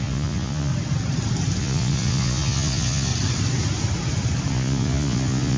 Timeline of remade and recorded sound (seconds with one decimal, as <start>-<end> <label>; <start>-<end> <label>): 0.0-0.7 remade; 0.7-1.6 recorded; 1.6-3.1 remade; 3.1-4.5 recorded; 4.5-5.6 remade